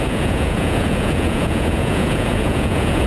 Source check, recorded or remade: remade